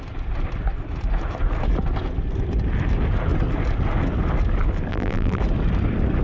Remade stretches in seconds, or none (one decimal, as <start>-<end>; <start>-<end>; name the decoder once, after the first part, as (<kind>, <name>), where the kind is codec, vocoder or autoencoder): 4.9-5.4 (vocoder, BigVGAN v2)